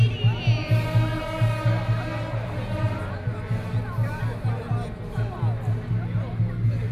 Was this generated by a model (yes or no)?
no